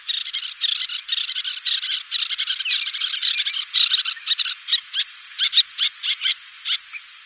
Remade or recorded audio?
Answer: recorded